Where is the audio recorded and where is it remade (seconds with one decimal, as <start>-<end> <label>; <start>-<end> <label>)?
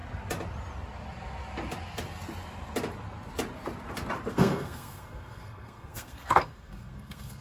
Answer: 0.0-4.3 recorded; 4.3-7.4 remade